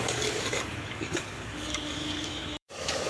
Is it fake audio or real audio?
fake